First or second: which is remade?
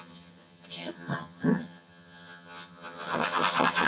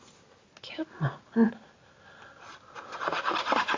first